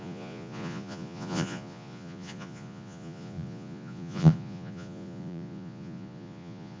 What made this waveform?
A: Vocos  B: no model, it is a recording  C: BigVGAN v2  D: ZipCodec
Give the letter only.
A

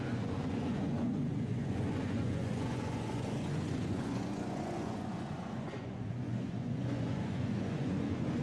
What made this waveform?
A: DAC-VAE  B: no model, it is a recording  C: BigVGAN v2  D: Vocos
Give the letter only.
D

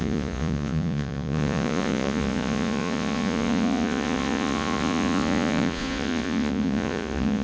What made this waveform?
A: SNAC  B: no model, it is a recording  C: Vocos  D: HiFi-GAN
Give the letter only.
C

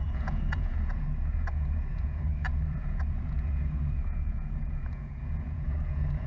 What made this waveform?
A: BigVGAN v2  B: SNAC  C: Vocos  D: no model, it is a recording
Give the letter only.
C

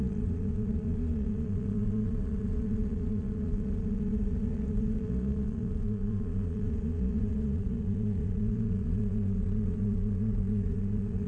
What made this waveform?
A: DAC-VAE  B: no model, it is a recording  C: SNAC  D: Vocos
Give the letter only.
D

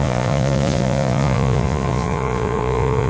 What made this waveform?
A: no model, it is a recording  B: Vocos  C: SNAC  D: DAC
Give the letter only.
B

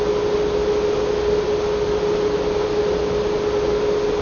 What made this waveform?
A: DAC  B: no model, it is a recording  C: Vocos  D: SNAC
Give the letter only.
B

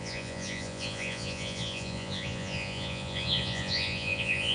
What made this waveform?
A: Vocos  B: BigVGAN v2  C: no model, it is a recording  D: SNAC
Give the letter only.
A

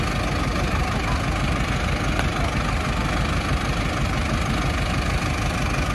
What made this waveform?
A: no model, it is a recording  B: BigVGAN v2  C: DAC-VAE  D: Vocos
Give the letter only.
A